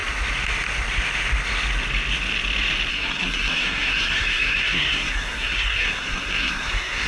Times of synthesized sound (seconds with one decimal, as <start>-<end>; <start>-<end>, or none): 2.9-7.1